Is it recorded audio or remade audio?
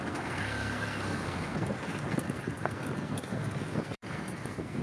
remade